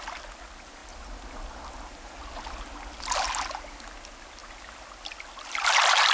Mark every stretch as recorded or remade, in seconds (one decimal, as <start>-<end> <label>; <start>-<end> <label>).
0.0-6.1 recorded